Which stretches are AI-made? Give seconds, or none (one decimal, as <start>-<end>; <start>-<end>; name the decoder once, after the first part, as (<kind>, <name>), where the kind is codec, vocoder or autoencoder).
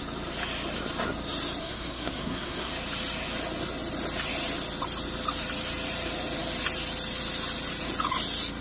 1.6-2.7 (codec, SNAC)